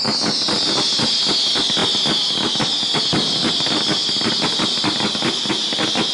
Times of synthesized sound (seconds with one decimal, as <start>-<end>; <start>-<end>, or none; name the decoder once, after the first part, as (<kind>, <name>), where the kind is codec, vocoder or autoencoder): none